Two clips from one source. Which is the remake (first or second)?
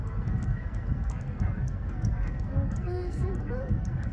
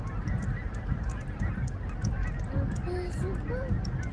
first